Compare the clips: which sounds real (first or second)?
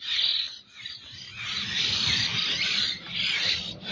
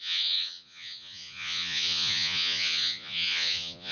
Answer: first